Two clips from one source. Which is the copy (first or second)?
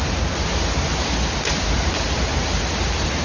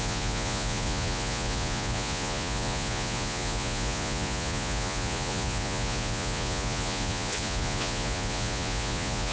second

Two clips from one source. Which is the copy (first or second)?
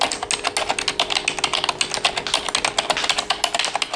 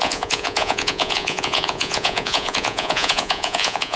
second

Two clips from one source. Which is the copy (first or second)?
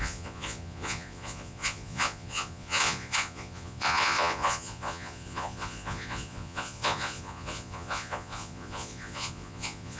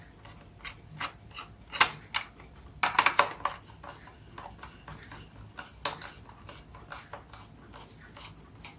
first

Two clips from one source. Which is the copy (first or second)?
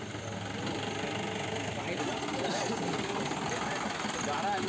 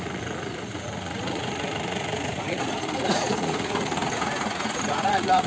second